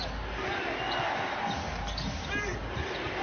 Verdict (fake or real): real